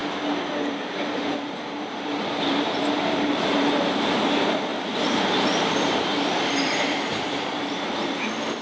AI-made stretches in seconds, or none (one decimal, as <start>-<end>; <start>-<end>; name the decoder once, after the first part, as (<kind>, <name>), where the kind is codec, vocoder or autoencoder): 0.0-3.7 (vocoder, BigVGAN v2); 4.7-8.2